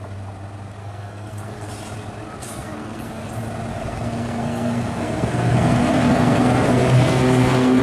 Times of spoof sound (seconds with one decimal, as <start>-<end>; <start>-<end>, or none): 0.8-1.7; 2.4-3.3; 3.7-7.8